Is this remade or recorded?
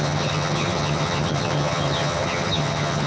remade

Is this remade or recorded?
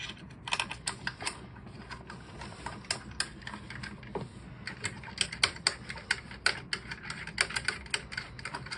recorded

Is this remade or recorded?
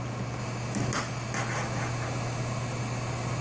recorded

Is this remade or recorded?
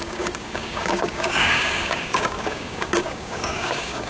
remade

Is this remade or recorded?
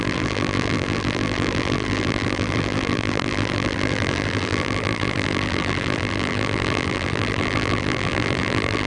remade